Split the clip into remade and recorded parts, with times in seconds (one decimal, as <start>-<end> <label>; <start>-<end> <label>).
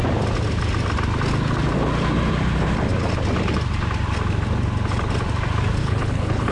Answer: 0.0-5.8 recorded; 5.8-6.5 remade